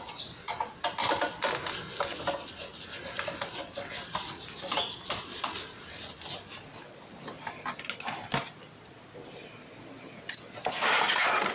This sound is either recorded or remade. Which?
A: recorded